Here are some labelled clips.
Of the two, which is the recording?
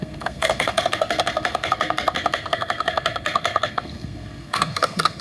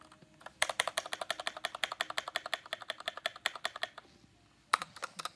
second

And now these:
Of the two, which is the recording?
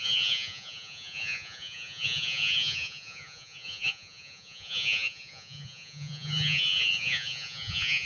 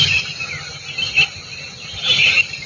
second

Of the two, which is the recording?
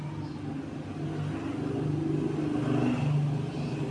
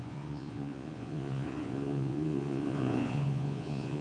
first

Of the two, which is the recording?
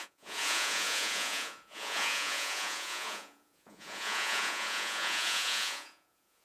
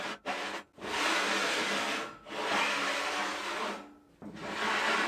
second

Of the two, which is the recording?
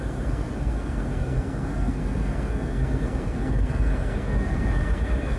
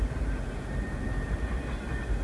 second